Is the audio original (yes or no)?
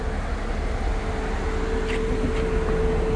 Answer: yes